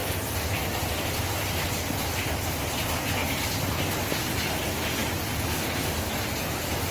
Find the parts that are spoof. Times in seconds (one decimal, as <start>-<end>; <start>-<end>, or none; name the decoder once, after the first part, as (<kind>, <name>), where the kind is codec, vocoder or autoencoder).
0.0-2.8 (vocoder, BigVGAN v2)